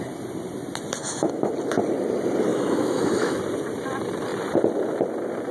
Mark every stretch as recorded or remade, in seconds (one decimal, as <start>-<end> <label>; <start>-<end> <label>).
0.0-1.0 recorded; 1.0-1.5 remade; 1.5-2.5 recorded; 2.5-3.4 remade; 3.4-5.5 recorded